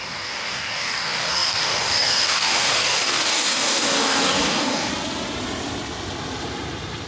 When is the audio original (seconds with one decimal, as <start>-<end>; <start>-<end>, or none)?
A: 4.9-7.1